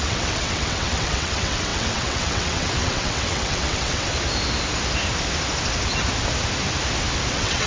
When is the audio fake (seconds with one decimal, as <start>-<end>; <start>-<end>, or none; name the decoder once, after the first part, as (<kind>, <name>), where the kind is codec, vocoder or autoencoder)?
0.0-4.1 (vocoder, WaveNeXt); 7.3-7.7